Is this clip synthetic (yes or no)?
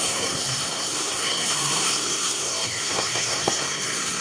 yes